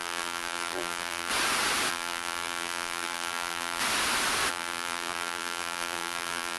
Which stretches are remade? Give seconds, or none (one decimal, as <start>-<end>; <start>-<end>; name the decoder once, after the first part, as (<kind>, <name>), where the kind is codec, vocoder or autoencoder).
0.0-1.3 (vocoder, BigVGAN v2); 1.9-3.8; 4.5-6.6

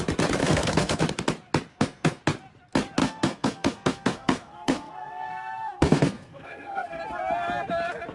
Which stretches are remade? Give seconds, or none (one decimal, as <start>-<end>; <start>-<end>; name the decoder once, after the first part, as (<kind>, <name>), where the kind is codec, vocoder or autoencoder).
0.4-1.0 (codec, SNAC); 1.7-2.2; 3.0-7.0

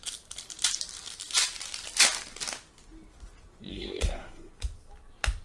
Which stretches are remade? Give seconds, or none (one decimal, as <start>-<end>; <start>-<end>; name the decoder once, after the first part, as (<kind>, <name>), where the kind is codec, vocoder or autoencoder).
3.7-4.5 (codec, SNAC)

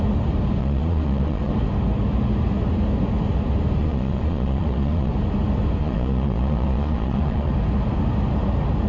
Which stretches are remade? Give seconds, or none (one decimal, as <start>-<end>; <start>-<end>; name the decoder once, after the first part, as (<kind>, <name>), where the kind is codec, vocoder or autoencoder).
0.6-1.5 (vocoder, Vocos); 3.8-5.1; 5.8-7.5

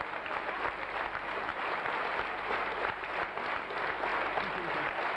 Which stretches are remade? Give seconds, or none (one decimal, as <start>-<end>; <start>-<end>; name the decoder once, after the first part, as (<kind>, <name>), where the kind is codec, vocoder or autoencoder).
1.5-3.1 (vocoder, BigVGAN v2)